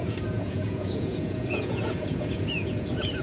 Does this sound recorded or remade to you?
remade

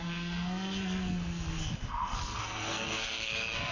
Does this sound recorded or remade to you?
remade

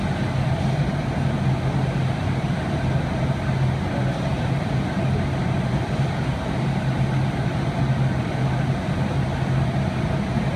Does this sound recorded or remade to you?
recorded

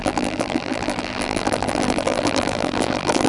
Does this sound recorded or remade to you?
remade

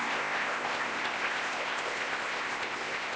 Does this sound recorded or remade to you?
remade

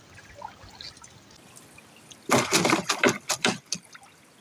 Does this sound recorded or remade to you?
recorded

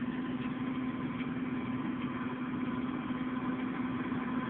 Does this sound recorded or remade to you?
recorded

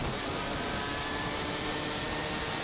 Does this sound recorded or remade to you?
remade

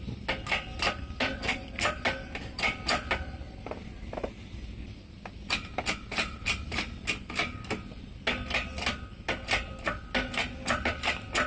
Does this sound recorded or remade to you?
recorded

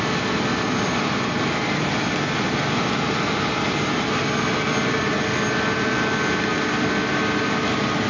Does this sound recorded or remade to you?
recorded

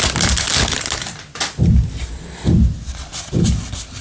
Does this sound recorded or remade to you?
recorded